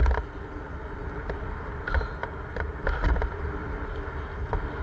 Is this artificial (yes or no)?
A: no